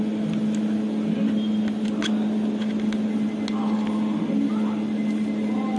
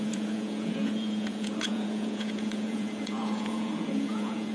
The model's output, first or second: second